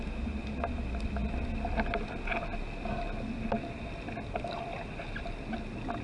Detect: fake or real real